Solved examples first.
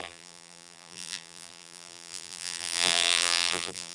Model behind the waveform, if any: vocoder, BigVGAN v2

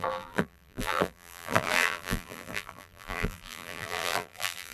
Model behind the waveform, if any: vocoder, BigVGAN v2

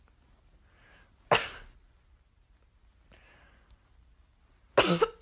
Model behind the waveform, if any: none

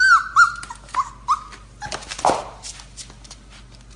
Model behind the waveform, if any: none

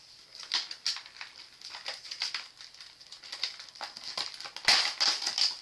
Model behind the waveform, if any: none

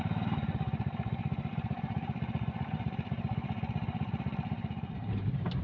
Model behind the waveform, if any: vocoder, BigVGAN v2